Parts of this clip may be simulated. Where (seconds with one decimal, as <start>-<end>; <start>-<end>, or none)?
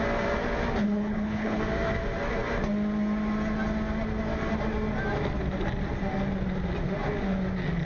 0.8-1.6